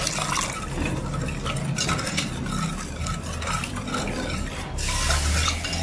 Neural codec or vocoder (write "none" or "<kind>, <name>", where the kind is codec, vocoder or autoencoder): none